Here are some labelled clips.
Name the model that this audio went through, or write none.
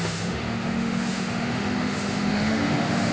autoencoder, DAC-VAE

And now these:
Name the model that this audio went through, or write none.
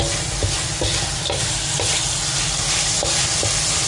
none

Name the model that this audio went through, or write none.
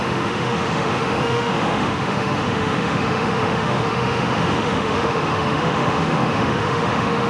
autoencoder, DAC-VAE